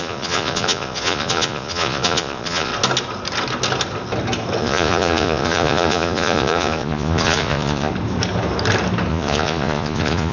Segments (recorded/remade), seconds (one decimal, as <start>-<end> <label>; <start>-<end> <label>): 0.0-2.7 remade; 2.7-4.6 recorded; 4.6-7.9 remade; 7.9-9.1 recorded; 9.1-10.3 remade